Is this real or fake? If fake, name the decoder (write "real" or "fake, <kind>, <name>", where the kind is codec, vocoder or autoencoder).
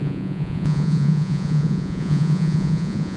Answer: fake, vocoder, Vocos